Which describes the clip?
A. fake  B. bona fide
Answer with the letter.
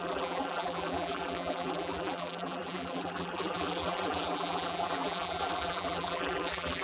A